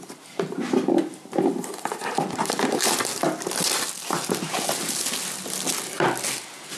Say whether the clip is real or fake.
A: real